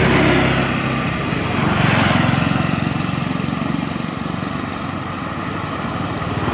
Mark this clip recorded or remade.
recorded